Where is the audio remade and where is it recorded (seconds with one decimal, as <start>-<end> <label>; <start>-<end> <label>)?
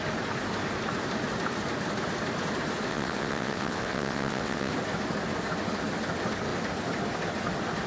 0.0-2.9 recorded; 2.9-4.7 remade; 4.7-7.9 recorded